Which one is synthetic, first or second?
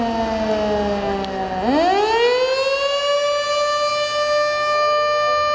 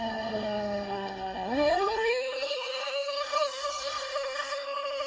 second